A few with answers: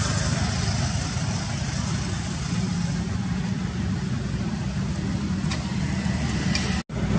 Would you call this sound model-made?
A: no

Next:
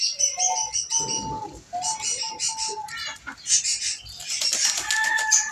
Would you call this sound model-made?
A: no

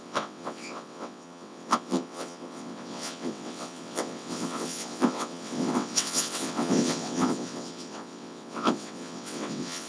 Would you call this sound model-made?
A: yes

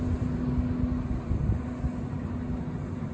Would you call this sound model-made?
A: no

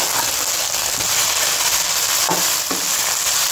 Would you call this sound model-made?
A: no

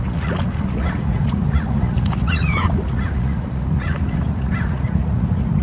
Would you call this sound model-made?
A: yes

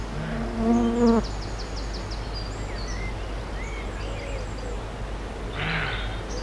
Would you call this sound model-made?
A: no